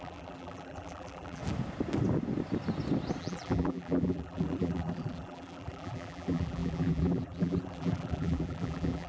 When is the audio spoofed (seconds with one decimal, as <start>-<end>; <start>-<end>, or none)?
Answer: 0.0-1.4; 3.2-9.1